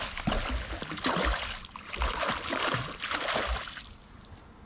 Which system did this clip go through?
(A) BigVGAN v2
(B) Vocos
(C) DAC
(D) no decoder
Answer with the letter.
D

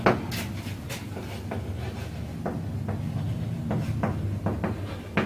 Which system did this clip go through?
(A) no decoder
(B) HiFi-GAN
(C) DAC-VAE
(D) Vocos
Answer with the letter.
A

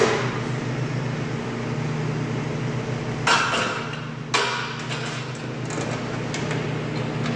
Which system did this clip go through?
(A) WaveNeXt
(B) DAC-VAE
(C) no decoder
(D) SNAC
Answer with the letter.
C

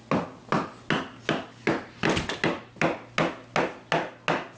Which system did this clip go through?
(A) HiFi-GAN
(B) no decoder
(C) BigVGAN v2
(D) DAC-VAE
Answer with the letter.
B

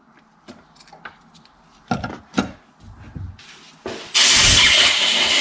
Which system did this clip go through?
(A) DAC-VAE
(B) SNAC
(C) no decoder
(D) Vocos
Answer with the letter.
C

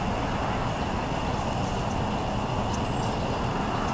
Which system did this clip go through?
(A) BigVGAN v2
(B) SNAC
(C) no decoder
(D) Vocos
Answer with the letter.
C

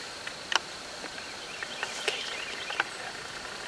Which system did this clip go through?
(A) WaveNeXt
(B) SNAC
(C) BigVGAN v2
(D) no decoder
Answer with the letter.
D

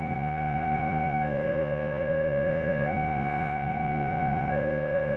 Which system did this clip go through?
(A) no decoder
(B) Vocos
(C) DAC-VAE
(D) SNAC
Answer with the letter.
B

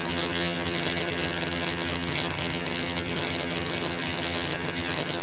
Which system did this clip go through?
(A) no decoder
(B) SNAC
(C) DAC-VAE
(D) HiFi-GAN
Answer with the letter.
D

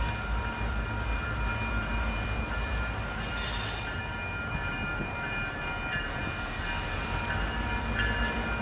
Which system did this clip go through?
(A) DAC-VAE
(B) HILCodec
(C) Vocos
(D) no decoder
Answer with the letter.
D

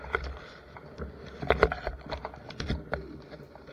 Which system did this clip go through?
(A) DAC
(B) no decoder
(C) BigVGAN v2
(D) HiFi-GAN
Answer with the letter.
B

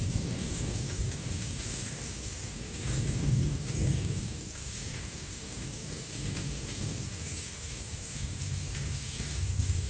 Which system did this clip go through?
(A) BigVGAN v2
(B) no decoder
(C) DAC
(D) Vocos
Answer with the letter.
C